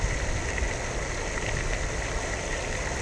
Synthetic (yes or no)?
no